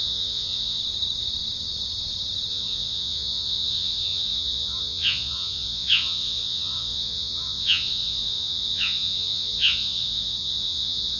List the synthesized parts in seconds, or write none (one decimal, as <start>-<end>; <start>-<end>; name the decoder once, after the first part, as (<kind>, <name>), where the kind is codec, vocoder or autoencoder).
0.0-0.8 (vocoder, Vocos); 2.5-11.2